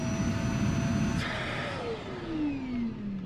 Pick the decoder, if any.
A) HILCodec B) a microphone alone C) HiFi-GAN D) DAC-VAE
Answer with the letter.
B